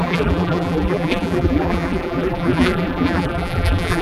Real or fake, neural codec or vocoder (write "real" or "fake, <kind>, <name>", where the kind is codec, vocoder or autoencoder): fake, vocoder, BigVGAN v2